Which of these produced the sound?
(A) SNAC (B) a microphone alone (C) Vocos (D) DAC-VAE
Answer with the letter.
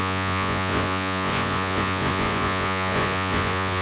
C